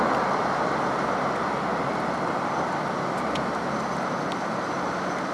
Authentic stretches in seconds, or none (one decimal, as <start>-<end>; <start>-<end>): 0.0-5.3